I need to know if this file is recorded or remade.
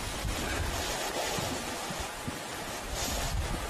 recorded